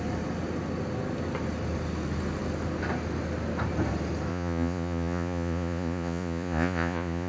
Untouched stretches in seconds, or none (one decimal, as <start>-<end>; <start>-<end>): 0.0-4.3